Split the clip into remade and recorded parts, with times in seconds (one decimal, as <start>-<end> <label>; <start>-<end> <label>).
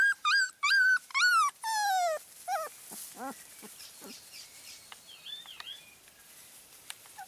0.0-1.1 remade; 1.1-3.5 recorded; 3.5-7.3 remade